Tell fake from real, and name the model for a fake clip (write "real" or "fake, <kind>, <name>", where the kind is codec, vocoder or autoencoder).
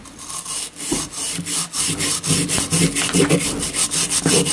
real